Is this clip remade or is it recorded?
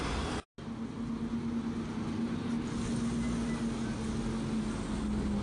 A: recorded